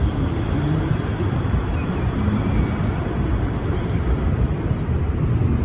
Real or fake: real